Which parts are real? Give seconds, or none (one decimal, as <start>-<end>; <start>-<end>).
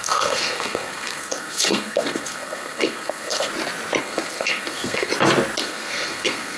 3.5-4.0; 5.1-5.6